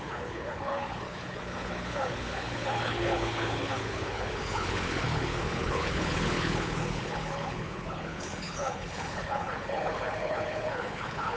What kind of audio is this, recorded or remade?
remade